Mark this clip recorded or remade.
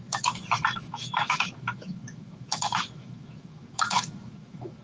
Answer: remade